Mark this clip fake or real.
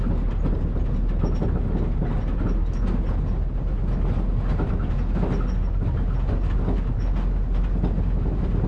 real